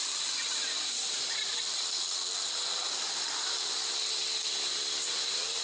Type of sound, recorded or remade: recorded